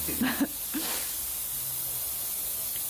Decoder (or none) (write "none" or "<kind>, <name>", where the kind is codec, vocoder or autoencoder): none